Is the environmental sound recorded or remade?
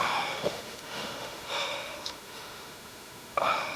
remade